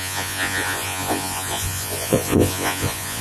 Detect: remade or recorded remade